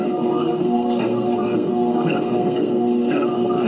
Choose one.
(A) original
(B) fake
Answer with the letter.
B